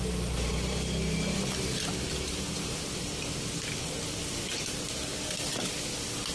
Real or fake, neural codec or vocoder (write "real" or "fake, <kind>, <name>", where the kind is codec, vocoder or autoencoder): real